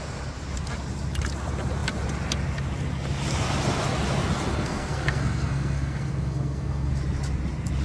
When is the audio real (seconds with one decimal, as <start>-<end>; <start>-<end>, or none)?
0.0-4.5; 6.9-7.8